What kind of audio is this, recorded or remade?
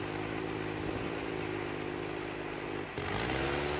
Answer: recorded